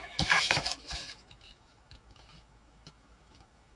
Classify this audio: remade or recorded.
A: remade